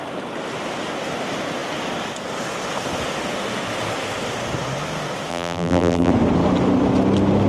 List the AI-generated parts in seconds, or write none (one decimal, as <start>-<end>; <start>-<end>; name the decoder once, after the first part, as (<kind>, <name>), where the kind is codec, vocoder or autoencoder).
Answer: 5.3-6.1 (vocoder, BigVGAN v2)